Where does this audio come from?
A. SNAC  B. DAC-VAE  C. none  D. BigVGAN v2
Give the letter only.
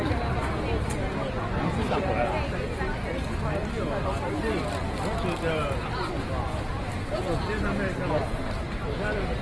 C